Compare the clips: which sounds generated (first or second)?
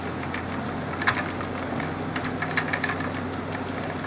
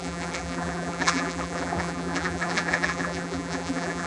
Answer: second